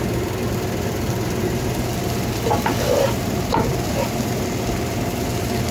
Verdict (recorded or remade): recorded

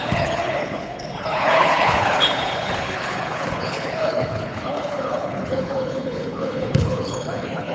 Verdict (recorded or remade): remade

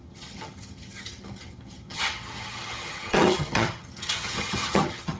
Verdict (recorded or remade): remade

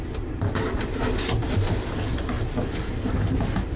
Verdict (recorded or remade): recorded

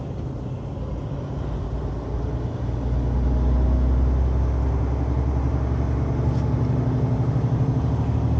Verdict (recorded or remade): recorded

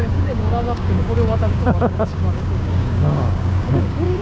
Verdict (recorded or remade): remade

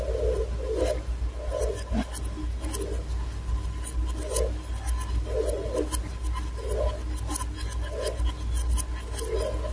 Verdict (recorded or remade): recorded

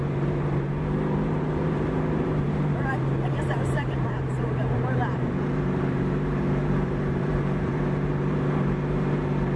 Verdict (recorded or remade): remade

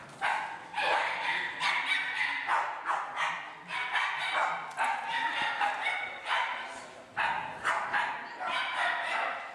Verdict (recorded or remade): recorded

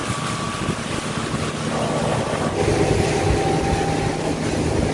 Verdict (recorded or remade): recorded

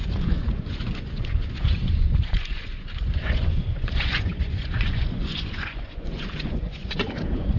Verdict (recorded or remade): remade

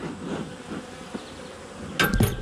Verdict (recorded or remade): recorded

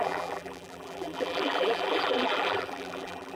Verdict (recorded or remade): remade